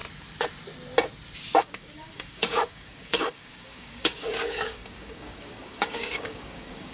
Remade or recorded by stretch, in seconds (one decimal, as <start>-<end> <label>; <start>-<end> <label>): 0.0-1.6 recorded; 1.6-6.9 remade